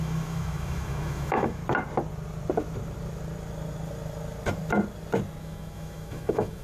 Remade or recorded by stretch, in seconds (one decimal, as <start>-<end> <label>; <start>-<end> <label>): 0.0-1.6 remade; 1.6-5.4 recorded; 5.4-6.6 remade